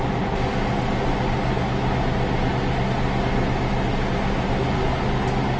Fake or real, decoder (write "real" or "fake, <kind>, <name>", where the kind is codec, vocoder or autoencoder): real